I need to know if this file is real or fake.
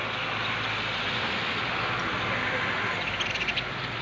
real